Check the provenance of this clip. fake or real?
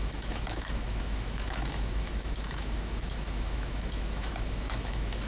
fake